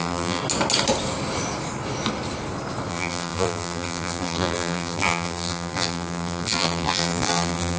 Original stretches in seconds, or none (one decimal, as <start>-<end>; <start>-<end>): 0.4-2.9